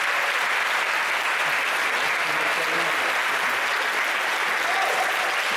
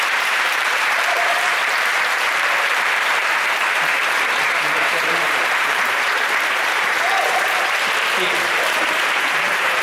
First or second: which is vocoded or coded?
second